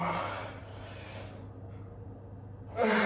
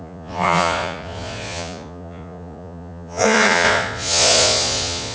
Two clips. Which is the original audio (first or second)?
first